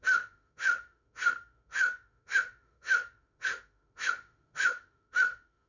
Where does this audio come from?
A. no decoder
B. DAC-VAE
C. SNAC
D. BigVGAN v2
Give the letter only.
B